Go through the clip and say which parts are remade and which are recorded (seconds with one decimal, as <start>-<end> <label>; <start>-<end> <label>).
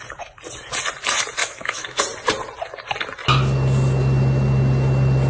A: 0.0-1.4 recorded; 1.4-2.0 remade; 2.0-5.3 recorded